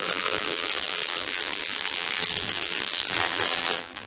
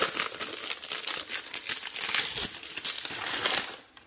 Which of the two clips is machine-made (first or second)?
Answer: first